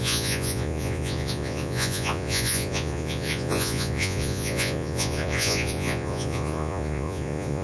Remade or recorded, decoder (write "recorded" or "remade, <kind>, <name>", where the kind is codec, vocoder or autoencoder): remade, vocoder, Vocos